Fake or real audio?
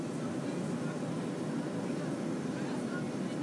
real